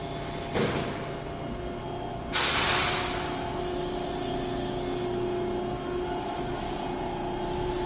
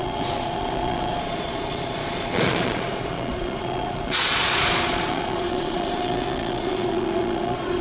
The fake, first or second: second